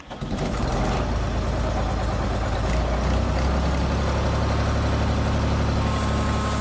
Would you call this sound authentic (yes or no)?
yes